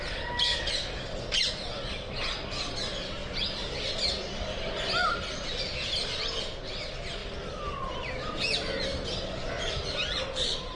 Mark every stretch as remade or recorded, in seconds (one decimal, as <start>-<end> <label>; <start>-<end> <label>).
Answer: 0.0-10.8 recorded